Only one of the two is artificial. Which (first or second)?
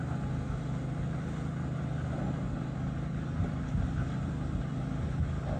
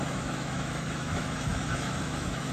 second